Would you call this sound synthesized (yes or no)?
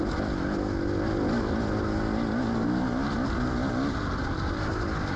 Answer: no